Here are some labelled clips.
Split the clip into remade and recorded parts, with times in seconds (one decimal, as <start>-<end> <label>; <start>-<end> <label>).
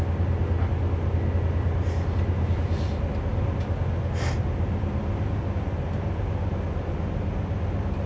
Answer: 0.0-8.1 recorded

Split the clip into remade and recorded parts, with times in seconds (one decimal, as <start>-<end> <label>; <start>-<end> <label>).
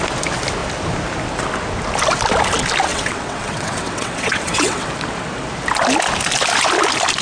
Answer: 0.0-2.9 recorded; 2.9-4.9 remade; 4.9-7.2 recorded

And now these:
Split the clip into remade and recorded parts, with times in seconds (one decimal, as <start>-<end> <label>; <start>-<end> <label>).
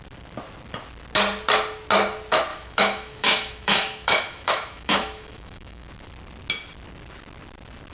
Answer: 0.0-2.5 recorded; 2.5-5.9 remade; 5.9-7.9 recorded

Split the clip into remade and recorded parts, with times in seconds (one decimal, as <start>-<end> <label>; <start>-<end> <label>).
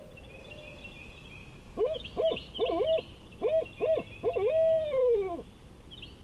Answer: 0.0-1.4 recorded; 1.4-2.5 remade; 2.5-5.0 recorded; 5.0-5.5 remade; 5.5-6.2 recorded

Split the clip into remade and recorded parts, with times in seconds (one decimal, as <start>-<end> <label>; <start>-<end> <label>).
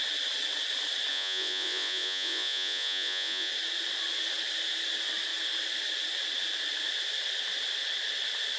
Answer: 0.0-1.1 recorded; 1.1-3.5 remade; 3.5-8.6 recorded